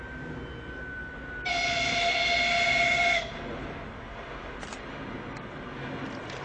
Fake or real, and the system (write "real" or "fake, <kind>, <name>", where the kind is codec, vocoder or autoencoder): real